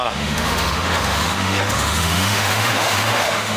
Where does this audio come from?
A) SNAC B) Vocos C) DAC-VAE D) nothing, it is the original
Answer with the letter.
C